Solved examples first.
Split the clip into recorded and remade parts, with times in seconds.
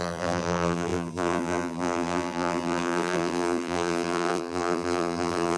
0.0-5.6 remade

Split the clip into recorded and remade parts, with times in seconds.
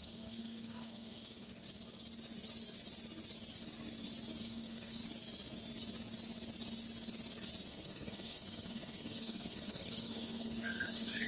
0.0-1.5 remade; 1.5-4.4 recorded; 4.4-5.0 remade; 5.0-7.7 recorded; 7.7-11.3 remade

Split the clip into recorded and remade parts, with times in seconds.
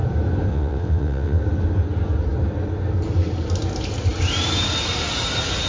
0.0-0.5 recorded; 0.5-1.4 remade; 1.4-5.7 recorded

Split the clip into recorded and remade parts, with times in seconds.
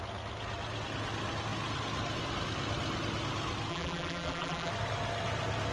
0.0-3.7 recorded; 3.7-4.7 remade; 4.7-5.7 recorded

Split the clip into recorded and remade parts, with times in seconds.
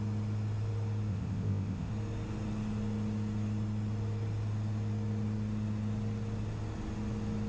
0.0-1.1 recorded; 1.1-1.9 remade; 1.9-7.5 recorded